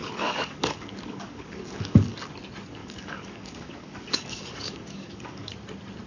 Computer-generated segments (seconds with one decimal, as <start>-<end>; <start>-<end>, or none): 0.0-2.3; 2.8-5.5